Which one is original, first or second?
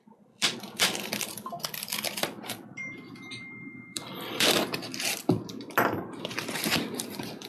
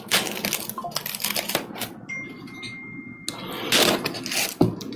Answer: second